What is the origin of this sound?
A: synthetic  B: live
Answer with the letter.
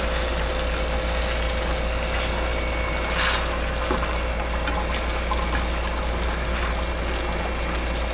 B